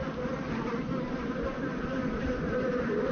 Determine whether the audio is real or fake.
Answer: real